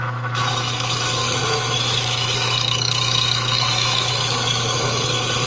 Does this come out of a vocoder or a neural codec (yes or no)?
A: yes